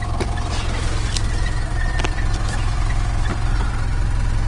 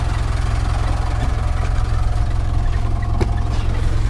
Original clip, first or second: second